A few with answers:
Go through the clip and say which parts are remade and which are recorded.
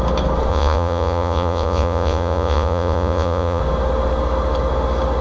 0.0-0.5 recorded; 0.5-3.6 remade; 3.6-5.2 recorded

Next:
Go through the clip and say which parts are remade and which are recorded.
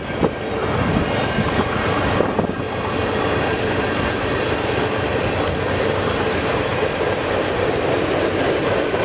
0.0-9.0 recorded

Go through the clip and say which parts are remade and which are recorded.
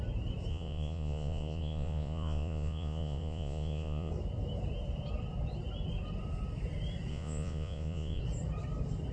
0.0-0.5 recorded; 0.5-4.1 remade; 4.1-7.1 recorded; 7.1-8.2 remade; 8.2-9.1 recorded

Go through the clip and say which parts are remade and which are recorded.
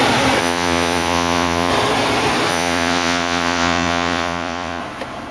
0.0-0.4 recorded; 0.4-1.7 remade; 1.7-2.5 recorded; 2.5-4.8 remade; 4.8-5.3 recorded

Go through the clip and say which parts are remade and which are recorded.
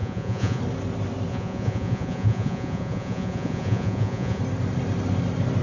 0.0-0.6 remade; 0.6-1.3 recorded; 1.3-4.4 remade; 4.4-5.6 recorded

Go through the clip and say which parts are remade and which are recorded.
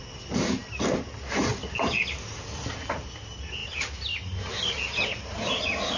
0.0-6.0 recorded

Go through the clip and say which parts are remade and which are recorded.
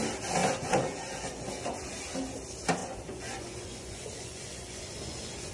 0.0-0.4 recorded; 0.4-1.9 remade; 1.9-2.8 recorded; 2.8-5.5 remade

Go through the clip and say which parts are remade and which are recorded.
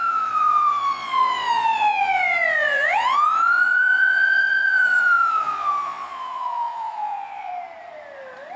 0.0-7.5 remade; 7.5-8.6 recorded